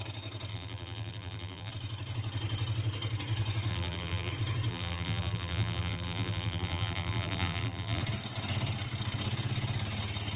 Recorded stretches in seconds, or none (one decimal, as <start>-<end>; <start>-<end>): 0.0-0.5; 1.7-3.7; 4.3-4.7; 8.0-10.4